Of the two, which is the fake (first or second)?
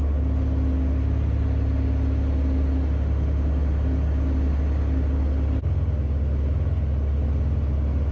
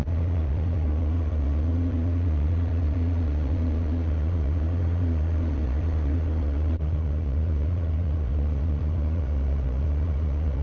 second